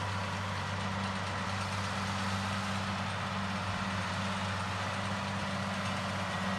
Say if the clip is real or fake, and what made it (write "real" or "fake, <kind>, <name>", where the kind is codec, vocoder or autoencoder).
real